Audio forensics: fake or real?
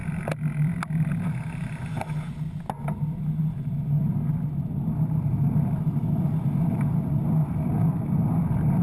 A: real